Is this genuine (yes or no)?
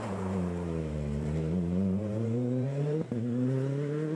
no